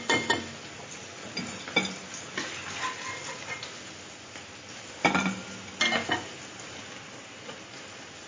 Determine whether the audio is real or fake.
real